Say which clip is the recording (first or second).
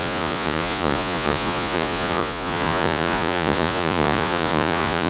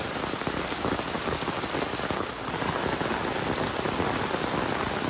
second